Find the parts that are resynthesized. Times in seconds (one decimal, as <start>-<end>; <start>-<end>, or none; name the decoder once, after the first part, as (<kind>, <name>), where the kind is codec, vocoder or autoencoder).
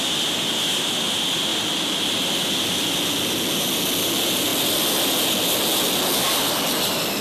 none